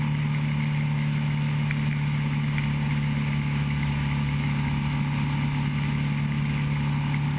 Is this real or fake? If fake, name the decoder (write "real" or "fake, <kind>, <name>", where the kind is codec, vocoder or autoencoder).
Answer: real